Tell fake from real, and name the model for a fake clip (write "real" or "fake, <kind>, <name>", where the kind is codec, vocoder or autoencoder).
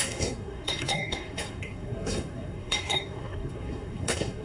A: fake, codec, SNAC